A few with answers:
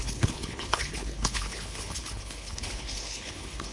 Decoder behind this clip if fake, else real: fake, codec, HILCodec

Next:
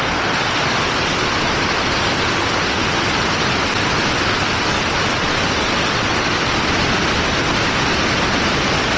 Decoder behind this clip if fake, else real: real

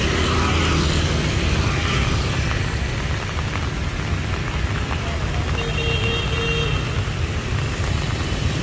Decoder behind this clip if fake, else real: real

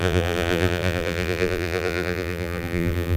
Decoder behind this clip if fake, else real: fake, vocoder, BigVGAN v2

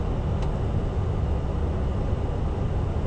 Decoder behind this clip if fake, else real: real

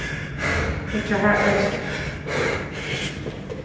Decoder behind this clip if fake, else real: real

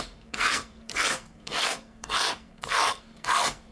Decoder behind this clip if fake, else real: fake, codec, SNAC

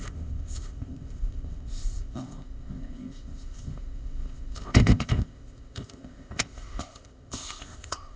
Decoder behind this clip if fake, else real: fake, codec, ZipCodec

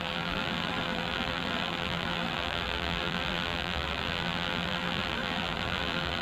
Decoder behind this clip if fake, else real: fake, vocoder, BigVGAN v2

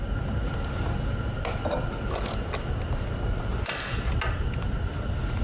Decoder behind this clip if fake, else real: real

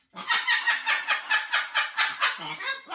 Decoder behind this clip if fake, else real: real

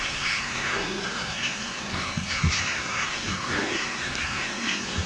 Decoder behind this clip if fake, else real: fake, codec, SNAC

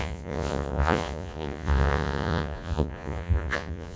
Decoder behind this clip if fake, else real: fake, vocoder, Vocos